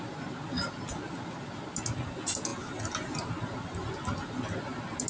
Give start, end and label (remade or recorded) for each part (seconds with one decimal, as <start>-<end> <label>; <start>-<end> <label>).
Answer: 0.0-5.1 recorded